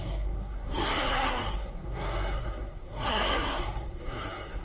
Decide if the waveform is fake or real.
fake